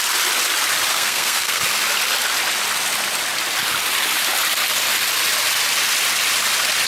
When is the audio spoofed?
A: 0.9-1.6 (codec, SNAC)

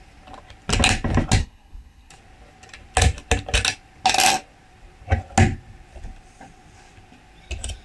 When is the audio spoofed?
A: 1.4-2.1 (codec, SNAC)

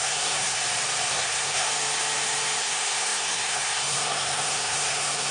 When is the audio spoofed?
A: 0.0-0.6 (codec, SNAC); 1.1-1.7; 2.6-5.3

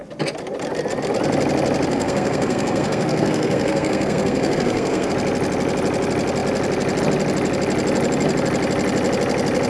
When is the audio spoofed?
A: 1.9-5.1 (codec, SNAC)

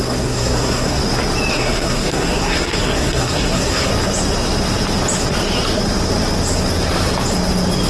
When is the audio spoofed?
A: 0.0-1.0 (codec, SNAC); 1.5-3.9